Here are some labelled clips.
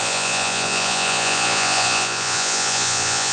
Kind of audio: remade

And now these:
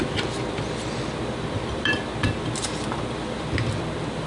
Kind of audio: remade